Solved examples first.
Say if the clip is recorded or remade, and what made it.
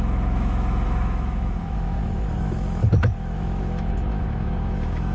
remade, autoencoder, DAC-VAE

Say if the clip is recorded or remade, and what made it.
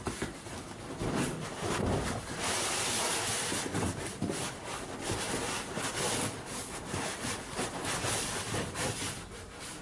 recorded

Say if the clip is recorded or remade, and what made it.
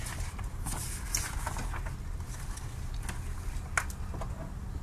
recorded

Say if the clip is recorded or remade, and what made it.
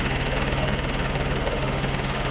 remade, autoencoder, DAC-VAE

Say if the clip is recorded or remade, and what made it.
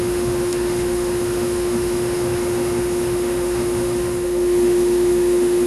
remade, autoencoder, DAC-VAE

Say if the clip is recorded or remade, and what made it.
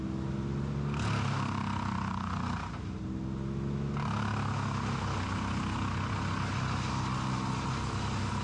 recorded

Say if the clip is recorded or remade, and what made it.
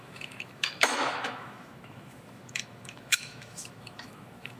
remade, autoencoder, DAC-VAE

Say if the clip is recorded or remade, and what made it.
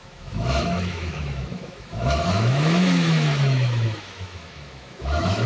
remade, autoencoder, DAC-VAE